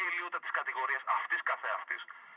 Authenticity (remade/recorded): remade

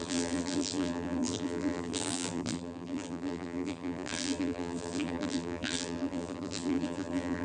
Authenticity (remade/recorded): remade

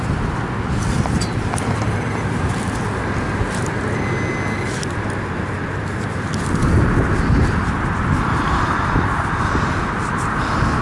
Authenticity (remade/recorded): recorded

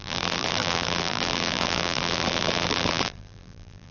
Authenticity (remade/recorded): remade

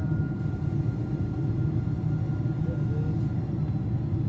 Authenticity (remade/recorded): recorded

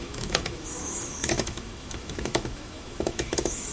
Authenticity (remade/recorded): remade